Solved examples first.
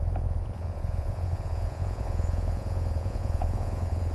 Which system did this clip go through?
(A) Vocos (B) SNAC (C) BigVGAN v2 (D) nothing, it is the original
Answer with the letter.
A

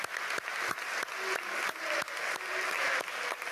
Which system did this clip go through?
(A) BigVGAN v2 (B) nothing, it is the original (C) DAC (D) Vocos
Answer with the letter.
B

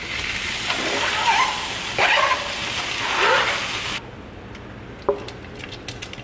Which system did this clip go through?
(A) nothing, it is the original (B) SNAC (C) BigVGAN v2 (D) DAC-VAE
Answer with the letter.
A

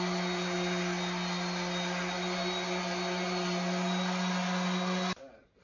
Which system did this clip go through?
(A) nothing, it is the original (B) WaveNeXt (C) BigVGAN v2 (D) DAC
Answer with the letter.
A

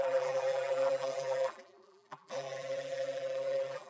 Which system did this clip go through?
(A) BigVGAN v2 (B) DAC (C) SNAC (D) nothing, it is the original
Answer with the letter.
A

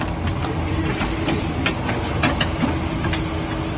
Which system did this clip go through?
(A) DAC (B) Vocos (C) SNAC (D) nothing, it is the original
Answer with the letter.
D